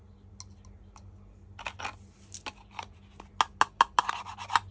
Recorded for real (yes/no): yes